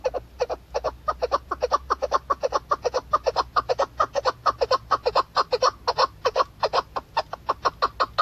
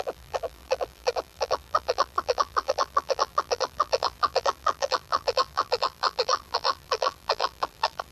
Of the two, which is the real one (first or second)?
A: first